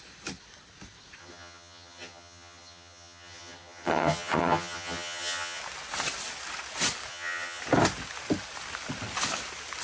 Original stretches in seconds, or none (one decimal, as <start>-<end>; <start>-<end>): 0.0-1.2; 5.6-7.1; 7.6-9.8